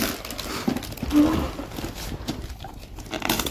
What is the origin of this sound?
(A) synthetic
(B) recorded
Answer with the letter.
B